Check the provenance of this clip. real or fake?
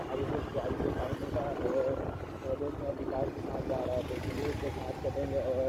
real